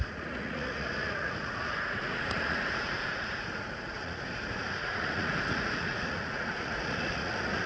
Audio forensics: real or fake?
fake